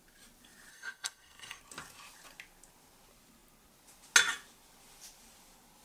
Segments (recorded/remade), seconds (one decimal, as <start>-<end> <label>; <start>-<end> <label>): 0.0-0.7 recorded; 0.7-1.6 remade; 1.6-5.8 recorded